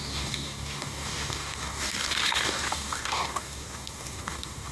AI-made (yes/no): yes